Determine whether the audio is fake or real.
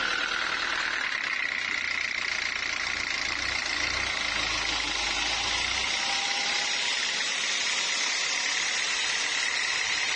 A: real